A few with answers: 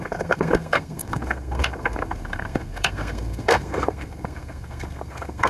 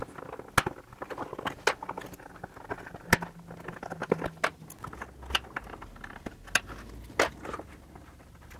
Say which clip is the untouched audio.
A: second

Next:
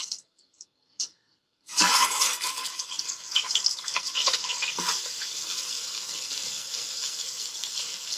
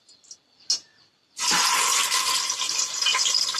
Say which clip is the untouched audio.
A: second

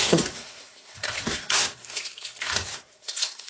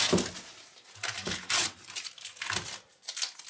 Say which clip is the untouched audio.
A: second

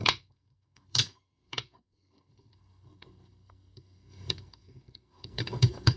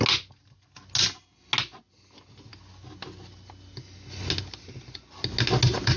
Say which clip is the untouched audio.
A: second